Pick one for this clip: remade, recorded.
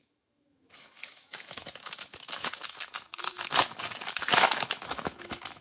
remade